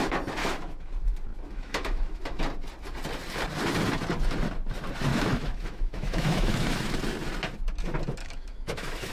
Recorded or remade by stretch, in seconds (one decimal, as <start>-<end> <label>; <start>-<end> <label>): 0.0-0.4 recorded; 0.4-0.9 remade; 0.9-1.3 recorded; 1.3-2.4 remade; 2.4-5.1 recorded; 5.1-6.9 remade; 6.9-8.2 recorded; 8.2-9.1 remade